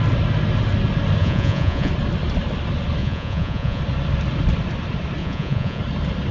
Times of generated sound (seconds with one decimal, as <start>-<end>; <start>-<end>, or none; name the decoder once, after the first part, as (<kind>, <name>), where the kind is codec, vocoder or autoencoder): 1.2-1.9 (vocoder, Vocos); 3.0-3.8; 5.2-5.8